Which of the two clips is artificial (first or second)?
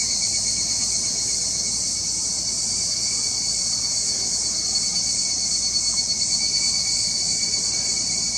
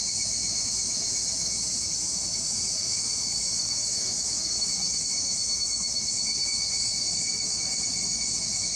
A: second